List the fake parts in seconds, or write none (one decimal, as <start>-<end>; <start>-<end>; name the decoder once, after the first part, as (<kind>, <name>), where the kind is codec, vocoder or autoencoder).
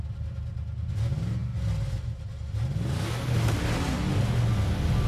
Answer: none